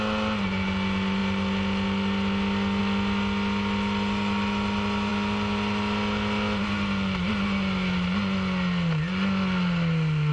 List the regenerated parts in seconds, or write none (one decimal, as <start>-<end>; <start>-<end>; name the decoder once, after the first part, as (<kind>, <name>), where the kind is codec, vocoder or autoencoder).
none